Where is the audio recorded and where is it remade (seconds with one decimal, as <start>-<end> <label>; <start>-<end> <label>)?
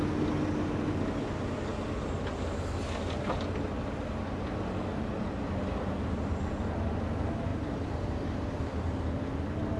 0.0-7.5 recorded; 7.5-8.6 remade; 8.6-9.8 recorded